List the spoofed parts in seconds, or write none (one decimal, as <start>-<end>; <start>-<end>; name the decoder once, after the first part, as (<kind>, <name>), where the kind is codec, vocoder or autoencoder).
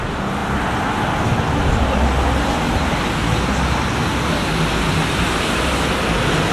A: none